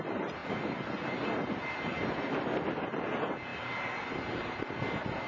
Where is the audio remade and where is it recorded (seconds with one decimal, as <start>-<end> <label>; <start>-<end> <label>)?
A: 0.0-5.3 recorded